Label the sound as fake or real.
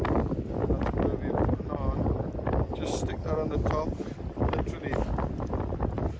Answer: real